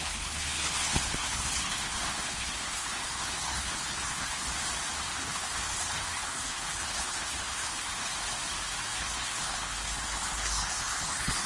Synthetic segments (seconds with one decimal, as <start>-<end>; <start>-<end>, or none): 0.0-4.5; 5.2-8.1; 9.0-11.5